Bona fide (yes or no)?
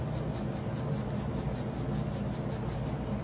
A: yes